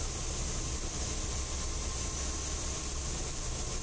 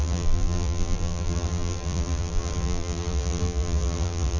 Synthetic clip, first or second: second